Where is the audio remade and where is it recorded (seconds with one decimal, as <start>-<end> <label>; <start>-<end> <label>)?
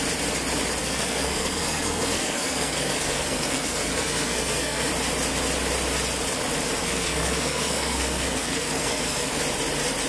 0.0-0.8 recorded; 0.8-4.9 remade; 4.9-6.8 recorded; 6.8-9.3 remade; 9.3-10.1 recorded